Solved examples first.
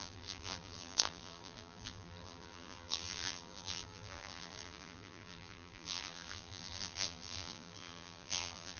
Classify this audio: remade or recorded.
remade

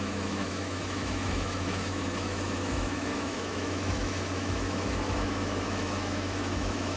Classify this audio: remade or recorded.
remade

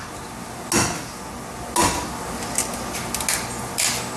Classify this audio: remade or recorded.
recorded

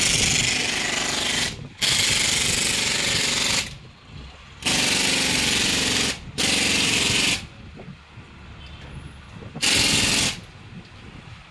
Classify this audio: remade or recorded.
recorded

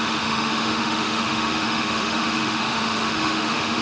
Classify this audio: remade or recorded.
remade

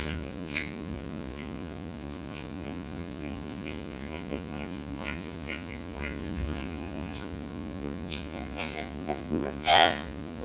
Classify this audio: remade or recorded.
remade